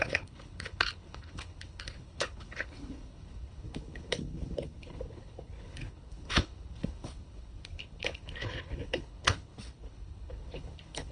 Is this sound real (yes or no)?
no